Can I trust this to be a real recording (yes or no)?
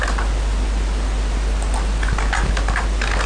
yes